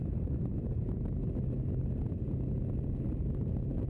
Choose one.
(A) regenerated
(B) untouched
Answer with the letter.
B